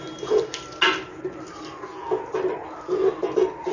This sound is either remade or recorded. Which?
recorded